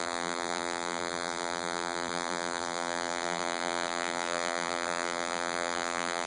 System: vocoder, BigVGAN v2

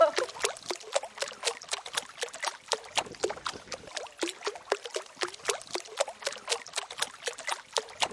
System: none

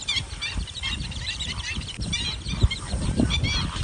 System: vocoder, BigVGAN v2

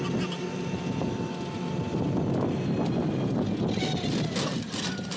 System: none